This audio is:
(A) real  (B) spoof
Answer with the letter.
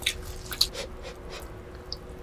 A